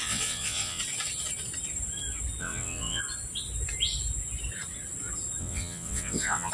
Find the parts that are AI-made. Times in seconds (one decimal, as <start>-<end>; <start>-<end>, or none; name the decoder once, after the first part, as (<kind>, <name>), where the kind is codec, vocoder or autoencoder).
0.0-0.8 (vocoder, WaveNeXt); 2.4-3.0; 5.4-6.5